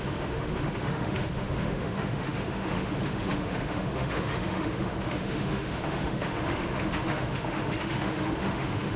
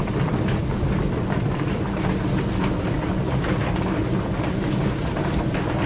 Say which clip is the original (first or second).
second